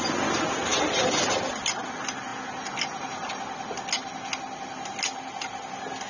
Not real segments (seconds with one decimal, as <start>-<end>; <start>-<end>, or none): none